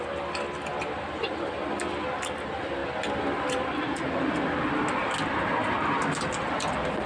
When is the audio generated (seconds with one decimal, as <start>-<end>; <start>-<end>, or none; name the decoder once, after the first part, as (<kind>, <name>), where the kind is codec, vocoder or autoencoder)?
none